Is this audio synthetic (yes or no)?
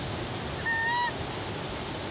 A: no